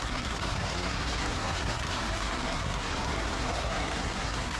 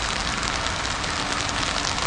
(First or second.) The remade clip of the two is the first